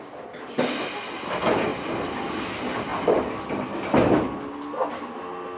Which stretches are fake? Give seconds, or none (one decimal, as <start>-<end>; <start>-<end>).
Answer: none